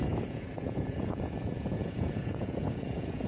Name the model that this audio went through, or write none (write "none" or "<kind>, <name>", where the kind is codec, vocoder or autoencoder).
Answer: vocoder, Vocos